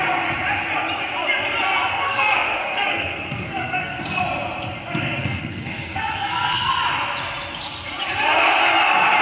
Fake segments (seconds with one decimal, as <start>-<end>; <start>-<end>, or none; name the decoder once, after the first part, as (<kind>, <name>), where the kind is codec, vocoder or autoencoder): 1.9-4.2 (codec, SNAC); 5.2-6.7

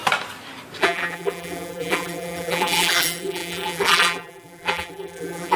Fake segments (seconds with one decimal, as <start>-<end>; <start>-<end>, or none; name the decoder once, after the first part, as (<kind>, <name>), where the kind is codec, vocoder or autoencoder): 0.8-5.6 (vocoder, BigVGAN v2)

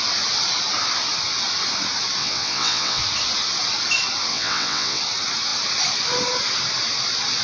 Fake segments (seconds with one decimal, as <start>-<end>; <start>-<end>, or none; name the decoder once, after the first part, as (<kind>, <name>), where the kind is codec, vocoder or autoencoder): 2.2-3.0 (vocoder, WaveNeXt); 4.3-5.0

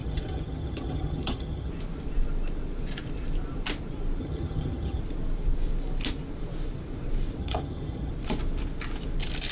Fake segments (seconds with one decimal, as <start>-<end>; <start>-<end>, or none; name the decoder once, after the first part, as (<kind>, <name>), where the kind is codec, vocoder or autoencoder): 0.0-1.7 (vocoder, HiFi-GAN); 4.2-5.0; 7.4-8.1

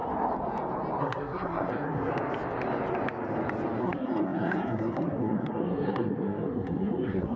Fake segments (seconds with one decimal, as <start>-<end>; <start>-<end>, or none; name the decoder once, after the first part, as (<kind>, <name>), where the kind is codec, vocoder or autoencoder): 1.0-2.1 (codec, SNAC); 3.8-7.4

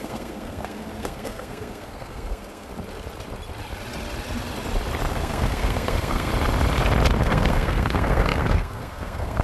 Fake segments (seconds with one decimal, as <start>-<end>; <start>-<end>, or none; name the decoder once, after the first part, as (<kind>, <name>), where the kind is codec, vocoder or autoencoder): 0.0-2.7 (codec, SNAC); 5.1-6.3; 7.2-9.4